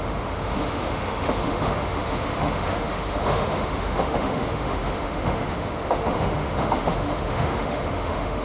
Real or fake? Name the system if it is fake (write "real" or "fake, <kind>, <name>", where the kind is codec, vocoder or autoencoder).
fake, autoencoder, DAC-VAE